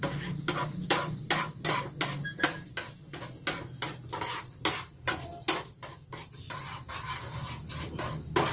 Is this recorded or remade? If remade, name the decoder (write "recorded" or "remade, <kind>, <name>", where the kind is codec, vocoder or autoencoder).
recorded